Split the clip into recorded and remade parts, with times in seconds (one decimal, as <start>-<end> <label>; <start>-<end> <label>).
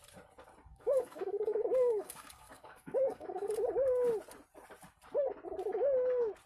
0.0-0.7 recorded; 0.7-3.6 remade; 3.6-6.5 recorded